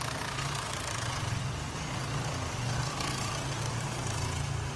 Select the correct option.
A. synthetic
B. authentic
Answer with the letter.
B